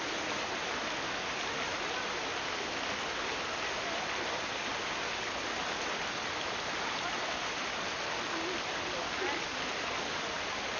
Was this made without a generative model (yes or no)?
yes